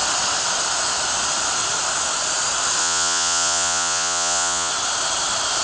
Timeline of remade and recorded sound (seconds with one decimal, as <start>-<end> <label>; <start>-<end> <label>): 0.0-2.8 recorded; 2.8-4.7 remade; 4.7-5.6 recorded